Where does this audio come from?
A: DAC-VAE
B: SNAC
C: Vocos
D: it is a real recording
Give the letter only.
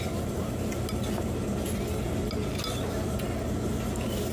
D